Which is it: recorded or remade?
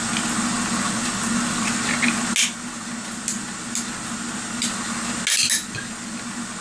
recorded